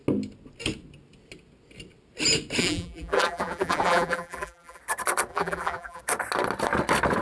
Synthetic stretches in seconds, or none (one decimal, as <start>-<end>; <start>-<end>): 2.6-4.8; 5.3-6.0